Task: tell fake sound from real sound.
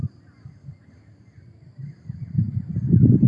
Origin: fake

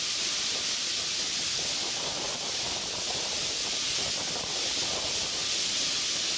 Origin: real